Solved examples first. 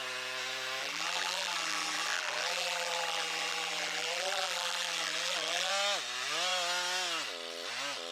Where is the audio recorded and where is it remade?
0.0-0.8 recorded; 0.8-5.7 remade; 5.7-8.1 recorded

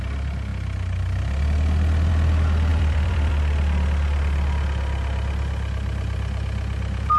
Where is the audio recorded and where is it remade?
0.0-2.7 recorded; 2.7-3.3 remade; 3.3-7.2 recorded

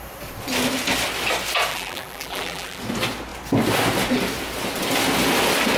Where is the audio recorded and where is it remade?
0.0-1.7 recorded; 1.7-2.8 remade; 2.8-5.8 recorded

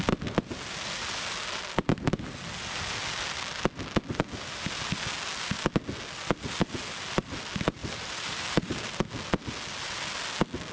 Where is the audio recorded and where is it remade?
0.0-7.8 recorded; 7.8-9.0 remade; 9.0-10.7 recorded

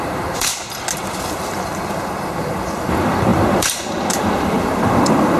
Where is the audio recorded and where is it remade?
0.0-0.5 remade; 0.5-1.3 recorded; 1.3-5.4 remade